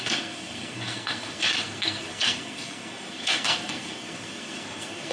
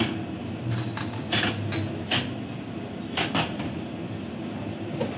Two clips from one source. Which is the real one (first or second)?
second